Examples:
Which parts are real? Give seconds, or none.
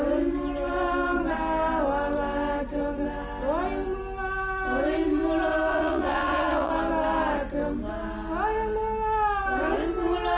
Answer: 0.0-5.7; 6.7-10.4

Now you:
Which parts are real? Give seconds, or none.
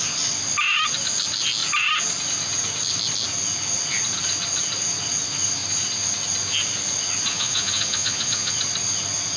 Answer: 0.0-7.3; 8.6-9.4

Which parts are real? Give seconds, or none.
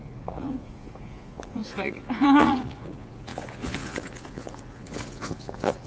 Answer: none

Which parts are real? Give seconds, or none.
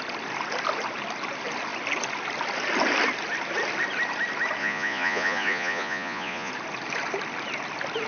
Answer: 0.0-4.6; 6.5-8.1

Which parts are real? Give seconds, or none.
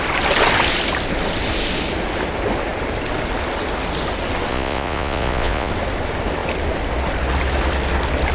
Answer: 0.0-4.5; 5.7-8.3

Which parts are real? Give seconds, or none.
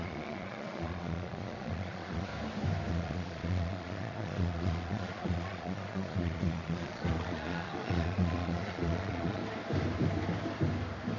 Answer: 2.3-2.9; 9.4-11.2